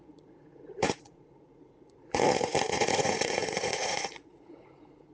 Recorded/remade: remade